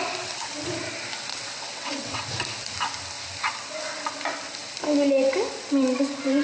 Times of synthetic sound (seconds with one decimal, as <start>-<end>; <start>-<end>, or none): 1.3-2.2